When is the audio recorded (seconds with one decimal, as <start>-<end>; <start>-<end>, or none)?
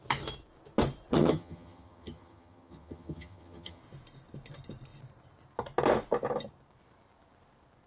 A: 0.0-1.1; 3.8-7.9